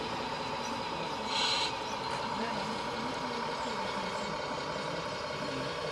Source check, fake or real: fake